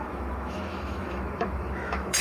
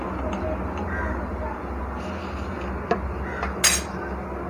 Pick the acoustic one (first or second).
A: second